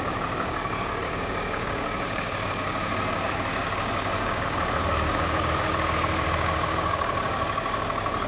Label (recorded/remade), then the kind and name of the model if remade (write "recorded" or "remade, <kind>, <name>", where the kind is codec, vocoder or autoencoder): remade, codec, DAC